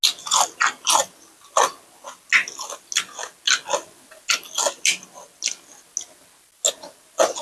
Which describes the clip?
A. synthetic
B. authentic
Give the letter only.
B